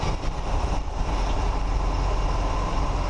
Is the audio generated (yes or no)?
no